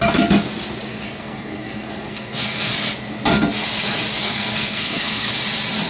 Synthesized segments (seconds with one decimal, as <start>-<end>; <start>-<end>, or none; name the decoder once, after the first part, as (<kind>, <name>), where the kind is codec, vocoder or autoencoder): 0.9-2.7 (codec, SNAC); 4.2-5.3